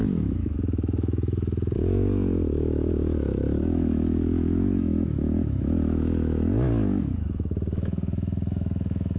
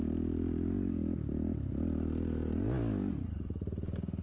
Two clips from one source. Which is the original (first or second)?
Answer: second